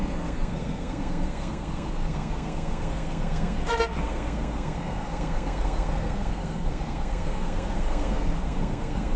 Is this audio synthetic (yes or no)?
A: yes